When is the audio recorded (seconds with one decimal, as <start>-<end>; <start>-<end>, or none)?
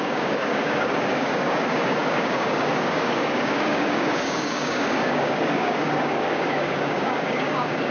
none